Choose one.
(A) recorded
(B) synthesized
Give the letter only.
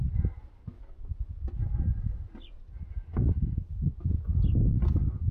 A